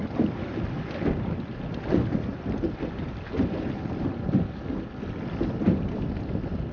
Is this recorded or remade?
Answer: recorded